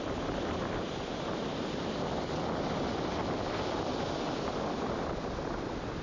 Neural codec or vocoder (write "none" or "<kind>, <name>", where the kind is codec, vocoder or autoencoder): none